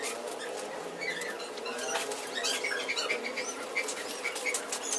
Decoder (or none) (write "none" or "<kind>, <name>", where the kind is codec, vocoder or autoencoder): none